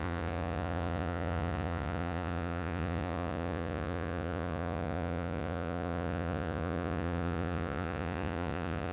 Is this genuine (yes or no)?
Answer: no